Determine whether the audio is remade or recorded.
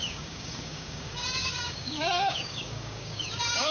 remade